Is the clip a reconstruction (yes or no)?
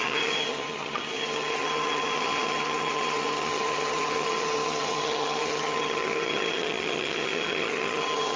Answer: yes